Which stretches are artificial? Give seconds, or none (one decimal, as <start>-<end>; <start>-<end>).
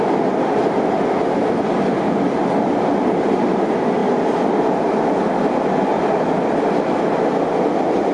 4.0-4.5; 5.9-8.1